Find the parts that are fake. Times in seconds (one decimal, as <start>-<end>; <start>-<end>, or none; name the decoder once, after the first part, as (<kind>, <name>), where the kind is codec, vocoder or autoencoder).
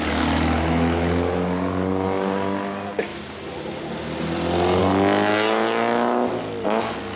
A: none